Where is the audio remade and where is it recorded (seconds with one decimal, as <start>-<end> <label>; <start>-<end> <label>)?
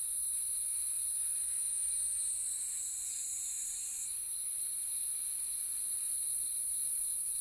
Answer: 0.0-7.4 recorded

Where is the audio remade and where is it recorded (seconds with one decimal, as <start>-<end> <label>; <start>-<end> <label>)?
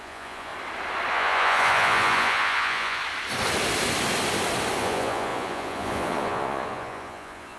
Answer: 0.0-0.5 remade; 0.5-1.1 recorded; 1.1-3.0 remade; 3.0-4.8 recorded; 4.8-7.6 remade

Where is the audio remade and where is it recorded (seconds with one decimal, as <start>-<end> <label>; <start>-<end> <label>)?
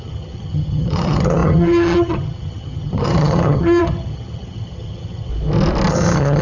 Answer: 0.0-5.3 remade; 5.3-5.9 recorded; 5.9-6.4 remade